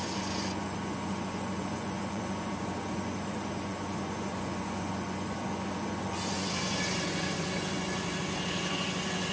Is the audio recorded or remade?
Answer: remade